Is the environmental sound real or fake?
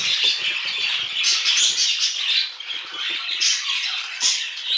real